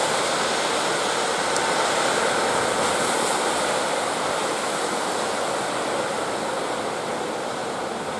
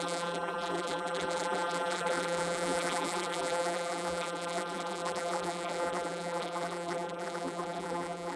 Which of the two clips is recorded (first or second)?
first